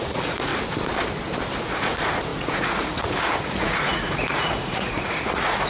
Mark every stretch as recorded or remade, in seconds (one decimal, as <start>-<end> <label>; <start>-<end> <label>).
0.0-0.5 remade; 0.5-1.6 recorded; 1.6-5.7 remade